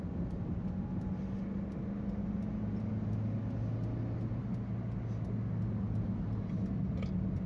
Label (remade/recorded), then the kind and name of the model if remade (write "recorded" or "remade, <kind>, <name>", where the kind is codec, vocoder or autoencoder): recorded